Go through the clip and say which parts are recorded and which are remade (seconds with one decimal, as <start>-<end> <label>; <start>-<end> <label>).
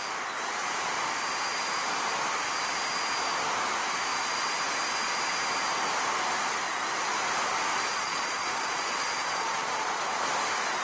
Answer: 0.0-7.9 recorded; 7.9-10.2 remade; 10.2-10.8 recorded